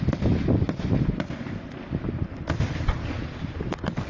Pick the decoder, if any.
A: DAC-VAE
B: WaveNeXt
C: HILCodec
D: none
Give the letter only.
D